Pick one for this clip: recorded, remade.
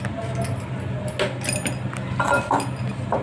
recorded